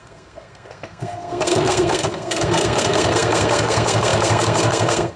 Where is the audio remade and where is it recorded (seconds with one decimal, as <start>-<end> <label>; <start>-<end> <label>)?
0.0-5.2 remade